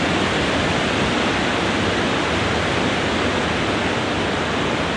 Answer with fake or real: real